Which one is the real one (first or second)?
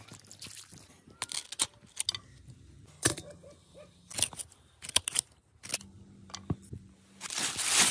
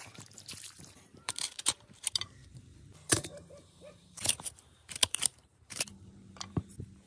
first